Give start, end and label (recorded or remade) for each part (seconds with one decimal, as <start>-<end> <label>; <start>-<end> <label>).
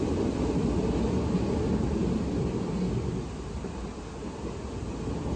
0.0-5.4 recorded